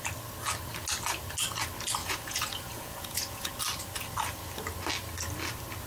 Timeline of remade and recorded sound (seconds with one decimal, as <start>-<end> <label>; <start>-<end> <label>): 0.0-2.0 recorded; 2.0-3.5 remade; 3.5-5.9 recorded